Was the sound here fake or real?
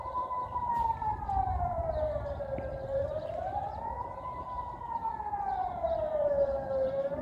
fake